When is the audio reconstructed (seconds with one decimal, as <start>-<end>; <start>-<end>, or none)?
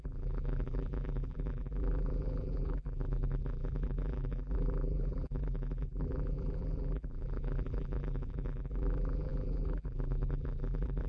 0.0-11.1